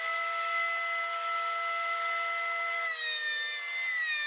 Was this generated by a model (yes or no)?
no